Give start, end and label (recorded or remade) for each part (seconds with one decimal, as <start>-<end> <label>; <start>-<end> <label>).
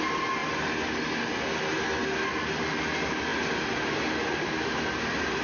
0.0-0.4 recorded; 0.4-1.0 remade; 1.0-5.4 recorded